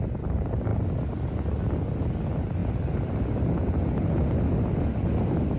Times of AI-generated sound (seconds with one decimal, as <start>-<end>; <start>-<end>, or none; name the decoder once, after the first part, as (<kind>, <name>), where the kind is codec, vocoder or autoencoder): 2.6-3.2 (vocoder, BigVGAN v2)